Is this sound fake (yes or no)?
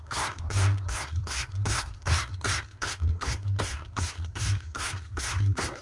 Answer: yes